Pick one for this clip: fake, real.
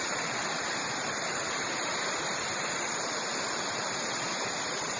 fake